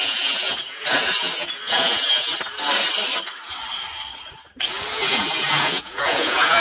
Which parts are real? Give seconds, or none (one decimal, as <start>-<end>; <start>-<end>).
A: 2.3-4.9